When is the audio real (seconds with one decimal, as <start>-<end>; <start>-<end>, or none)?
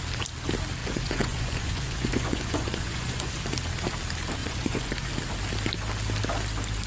0.0-0.8; 3.4-4.4; 5.1-6.9